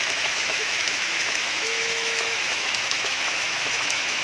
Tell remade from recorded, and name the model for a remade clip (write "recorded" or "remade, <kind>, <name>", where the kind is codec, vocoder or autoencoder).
remade, autoencoder, DAC-VAE